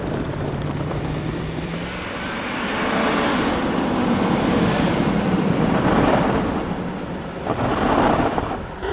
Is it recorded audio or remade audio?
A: remade